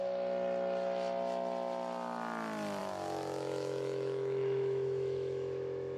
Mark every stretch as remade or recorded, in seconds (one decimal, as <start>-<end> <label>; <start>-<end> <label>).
0.0-2.8 recorded; 2.8-6.0 remade

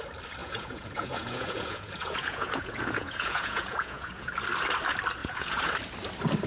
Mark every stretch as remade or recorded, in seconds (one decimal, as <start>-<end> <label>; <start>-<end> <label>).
0.0-0.4 recorded; 0.4-4.3 remade; 4.3-5.2 recorded; 5.2-5.7 remade; 5.7-6.5 recorded

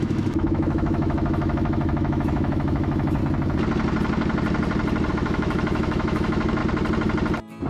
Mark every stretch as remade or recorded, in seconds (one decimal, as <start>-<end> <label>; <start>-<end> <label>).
0.0-3.2 remade; 3.2-5.1 recorded; 5.1-6.6 remade; 6.6-7.7 recorded

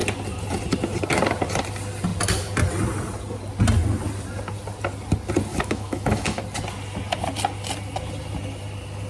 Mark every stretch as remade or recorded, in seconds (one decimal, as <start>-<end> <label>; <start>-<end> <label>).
0.0-5.5 recorded; 5.5-6.4 remade; 6.4-9.1 recorded

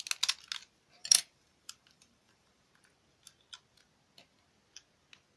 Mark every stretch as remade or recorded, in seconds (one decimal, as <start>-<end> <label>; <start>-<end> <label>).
0.0-1.0 recorded; 1.0-2.7 remade; 2.7-5.4 recorded

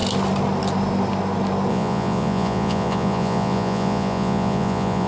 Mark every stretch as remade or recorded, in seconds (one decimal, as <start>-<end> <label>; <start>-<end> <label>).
0.0-1.7 recorded; 1.7-5.1 remade